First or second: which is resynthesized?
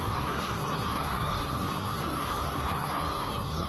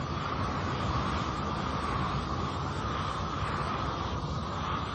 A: first